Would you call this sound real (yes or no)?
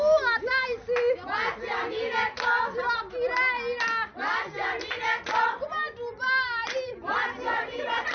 yes